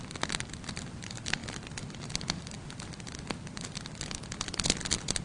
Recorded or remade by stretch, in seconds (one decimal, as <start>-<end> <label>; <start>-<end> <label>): 0.0-5.2 recorded